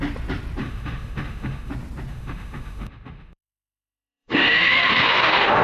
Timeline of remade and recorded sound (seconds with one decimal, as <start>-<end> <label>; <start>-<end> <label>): 0.0-0.6 recorded; 0.6-1.7 remade; 1.7-2.1 recorded; 2.1-5.6 remade